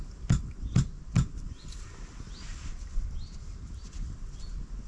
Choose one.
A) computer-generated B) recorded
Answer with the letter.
B